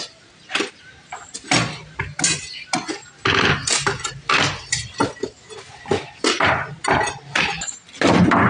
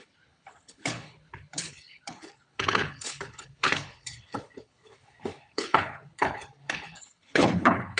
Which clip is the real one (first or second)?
first